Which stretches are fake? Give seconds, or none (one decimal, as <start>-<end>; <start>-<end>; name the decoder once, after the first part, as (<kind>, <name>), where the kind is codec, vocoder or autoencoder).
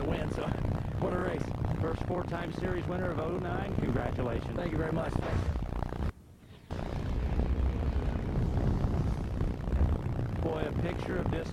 1.2-2.9 (vocoder, BigVGAN v2)